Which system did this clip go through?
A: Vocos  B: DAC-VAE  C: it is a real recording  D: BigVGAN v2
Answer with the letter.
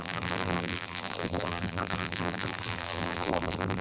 D